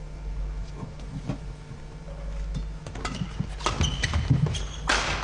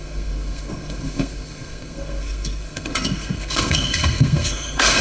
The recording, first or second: first